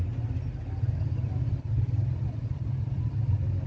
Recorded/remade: recorded